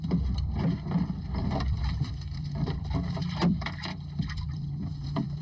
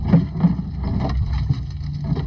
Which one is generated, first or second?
first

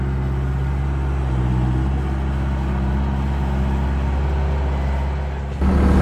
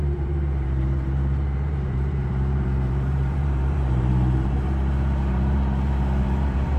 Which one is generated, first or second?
second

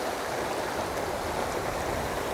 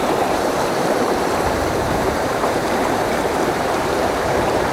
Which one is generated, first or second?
second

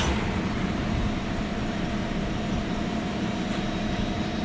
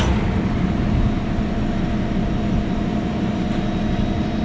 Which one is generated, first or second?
first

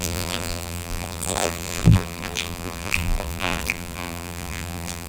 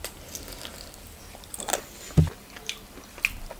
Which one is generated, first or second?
first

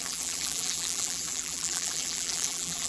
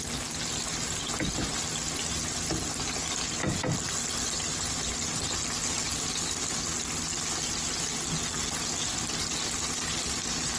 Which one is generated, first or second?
first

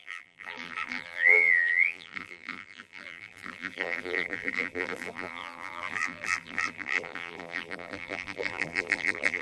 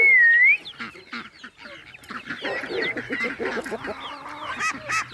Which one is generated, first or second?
first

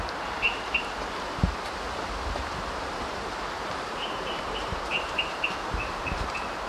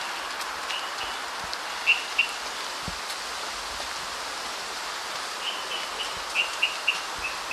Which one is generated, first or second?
first